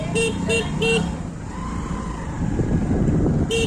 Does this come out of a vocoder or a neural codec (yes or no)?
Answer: no